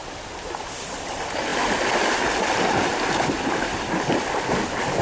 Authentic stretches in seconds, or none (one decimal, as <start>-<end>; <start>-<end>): 0.0-5.0